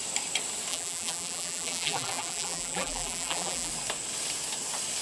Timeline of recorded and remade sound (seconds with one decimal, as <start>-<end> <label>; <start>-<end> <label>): 0.0-0.7 recorded; 0.7-3.7 remade; 3.7-5.0 recorded